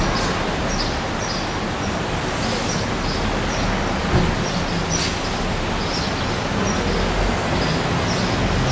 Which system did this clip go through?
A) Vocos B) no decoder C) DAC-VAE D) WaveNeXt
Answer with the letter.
B